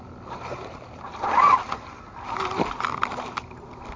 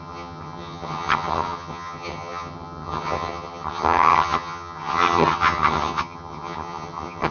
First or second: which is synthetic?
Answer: second